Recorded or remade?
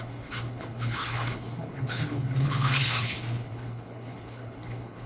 remade